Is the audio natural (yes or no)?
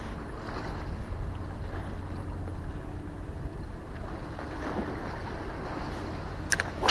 yes